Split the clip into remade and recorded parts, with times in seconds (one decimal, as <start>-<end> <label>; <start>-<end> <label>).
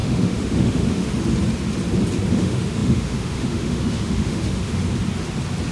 0.0-1.1 remade; 1.1-2.3 recorded; 2.3-4.8 remade; 4.8-5.7 recorded